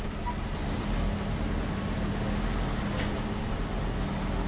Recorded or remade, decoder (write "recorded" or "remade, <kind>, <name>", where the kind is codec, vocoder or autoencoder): recorded